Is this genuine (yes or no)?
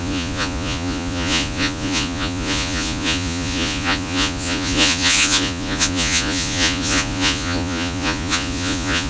no